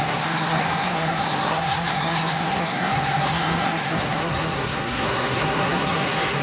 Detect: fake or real fake